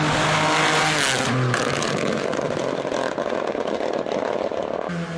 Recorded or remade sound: recorded